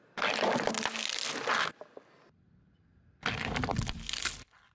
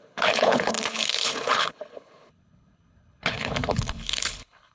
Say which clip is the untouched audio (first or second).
first